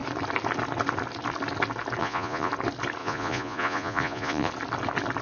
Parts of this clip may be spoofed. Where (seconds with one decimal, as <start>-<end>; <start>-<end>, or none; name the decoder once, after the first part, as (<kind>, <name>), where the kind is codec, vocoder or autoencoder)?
2.0-2.5 (vocoder, Vocos); 3.0-4.5